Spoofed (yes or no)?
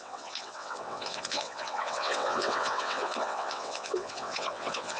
yes